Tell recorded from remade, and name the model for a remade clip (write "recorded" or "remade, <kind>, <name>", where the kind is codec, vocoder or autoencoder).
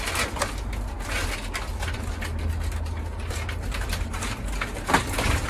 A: recorded